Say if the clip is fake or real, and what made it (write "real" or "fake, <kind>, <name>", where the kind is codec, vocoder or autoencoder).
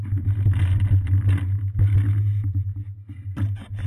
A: real